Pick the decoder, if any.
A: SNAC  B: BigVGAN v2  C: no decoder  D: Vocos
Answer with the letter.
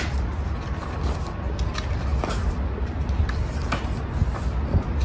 C